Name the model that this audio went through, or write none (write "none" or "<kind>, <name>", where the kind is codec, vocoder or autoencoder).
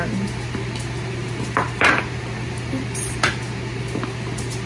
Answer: none